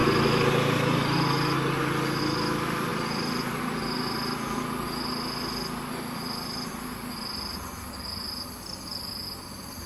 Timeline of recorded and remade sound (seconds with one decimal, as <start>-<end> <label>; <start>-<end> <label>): 0.0-2.9 recorded; 2.9-3.6 remade; 3.6-9.9 recorded